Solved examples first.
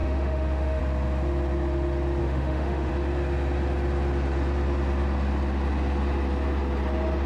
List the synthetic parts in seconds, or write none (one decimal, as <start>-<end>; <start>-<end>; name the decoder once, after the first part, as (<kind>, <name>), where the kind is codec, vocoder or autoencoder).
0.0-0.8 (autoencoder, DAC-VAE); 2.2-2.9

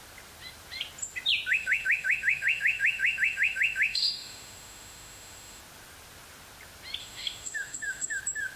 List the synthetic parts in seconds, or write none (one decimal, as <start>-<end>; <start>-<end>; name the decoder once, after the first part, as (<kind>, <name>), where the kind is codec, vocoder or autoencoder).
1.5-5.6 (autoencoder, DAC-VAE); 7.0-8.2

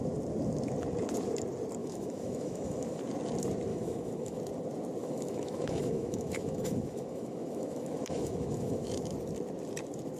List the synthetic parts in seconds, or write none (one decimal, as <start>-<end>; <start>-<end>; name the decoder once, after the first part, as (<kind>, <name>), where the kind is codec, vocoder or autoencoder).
1.8-3.0 (autoencoder, DAC-VAE); 3.7-4.4; 5.0-8.9